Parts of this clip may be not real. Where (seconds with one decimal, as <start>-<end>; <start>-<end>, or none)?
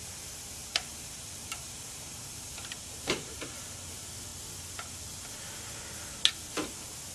0.6-3.9